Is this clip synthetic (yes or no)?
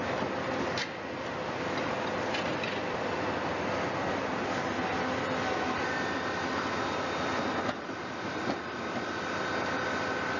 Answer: no